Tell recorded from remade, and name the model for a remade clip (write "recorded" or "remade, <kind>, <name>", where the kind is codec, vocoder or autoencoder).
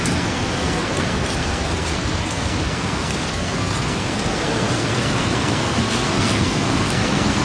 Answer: remade, codec, SNAC